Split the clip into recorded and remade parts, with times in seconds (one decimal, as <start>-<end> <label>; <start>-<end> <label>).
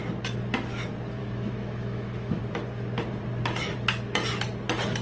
0.0-1.2 recorded; 1.2-2.4 remade; 2.4-5.0 recorded